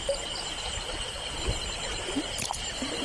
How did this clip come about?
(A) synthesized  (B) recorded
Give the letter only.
B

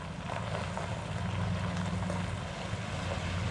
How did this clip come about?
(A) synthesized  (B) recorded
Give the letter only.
B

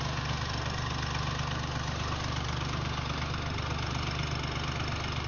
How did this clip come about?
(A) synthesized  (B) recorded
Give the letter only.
B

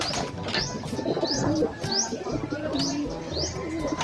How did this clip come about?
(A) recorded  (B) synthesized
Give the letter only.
A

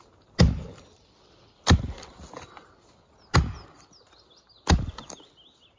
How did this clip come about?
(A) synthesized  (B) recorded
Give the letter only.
B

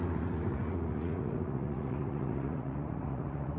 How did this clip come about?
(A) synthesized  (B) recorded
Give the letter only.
A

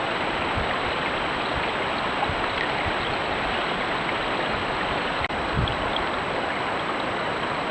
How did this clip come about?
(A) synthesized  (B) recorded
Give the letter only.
B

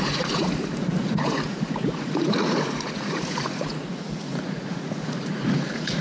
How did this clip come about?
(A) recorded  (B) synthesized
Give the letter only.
B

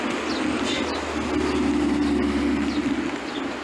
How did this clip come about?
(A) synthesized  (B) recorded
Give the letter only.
B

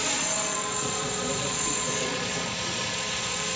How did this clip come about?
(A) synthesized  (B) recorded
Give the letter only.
A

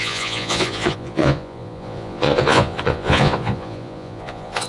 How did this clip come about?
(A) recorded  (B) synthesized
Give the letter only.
B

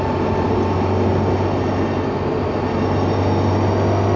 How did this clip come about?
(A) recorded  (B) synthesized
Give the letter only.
A